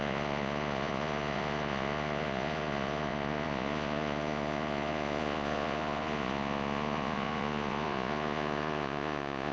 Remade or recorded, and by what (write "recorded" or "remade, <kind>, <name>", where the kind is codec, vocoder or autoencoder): remade, vocoder, Vocos